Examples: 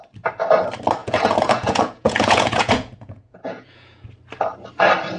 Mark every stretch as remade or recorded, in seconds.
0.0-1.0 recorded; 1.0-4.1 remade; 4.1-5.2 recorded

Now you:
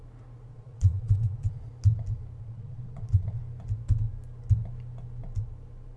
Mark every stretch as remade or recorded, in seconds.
0.0-0.5 recorded; 0.5-1.7 remade; 1.7-2.4 recorded; 2.4-3.4 remade; 3.4-6.0 recorded

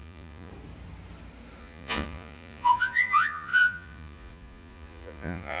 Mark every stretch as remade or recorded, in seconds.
0.0-0.5 remade; 0.5-1.6 recorded; 1.6-5.6 remade

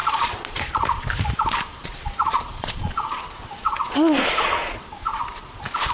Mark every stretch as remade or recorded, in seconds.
0.0-1.1 remade; 1.1-1.7 recorded; 1.7-5.2 remade; 5.2-5.9 recorded

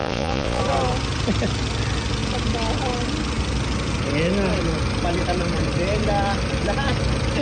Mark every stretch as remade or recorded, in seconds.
0.0-0.6 remade; 0.6-7.4 recorded

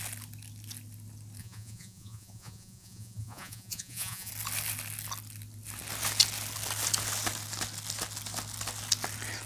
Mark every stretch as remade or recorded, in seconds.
0.0-1.4 recorded; 1.4-4.3 remade; 4.3-9.5 recorded

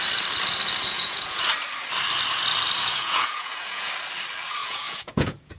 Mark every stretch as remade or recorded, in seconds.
0.0-0.8 recorded; 0.8-1.4 remade; 1.4-2.8 recorded; 2.8-3.9 remade; 3.9-4.6 recorded; 4.6-5.6 remade

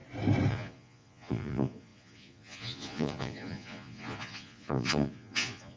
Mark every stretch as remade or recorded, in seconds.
0.0-0.5 recorded; 0.5-5.8 remade